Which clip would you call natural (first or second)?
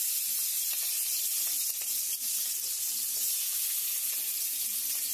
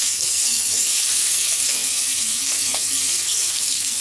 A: first